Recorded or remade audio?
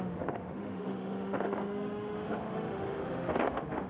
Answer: remade